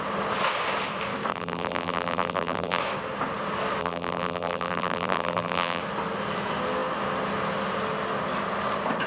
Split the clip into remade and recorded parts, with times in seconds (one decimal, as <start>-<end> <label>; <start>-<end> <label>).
0.0-1.3 recorded; 1.3-2.8 remade; 2.8-3.8 recorded; 3.8-5.8 remade; 5.8-9.1 recorded